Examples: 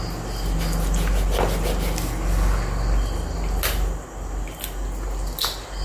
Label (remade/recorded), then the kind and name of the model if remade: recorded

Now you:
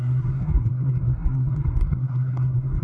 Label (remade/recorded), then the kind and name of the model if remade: remade, codec, SNAC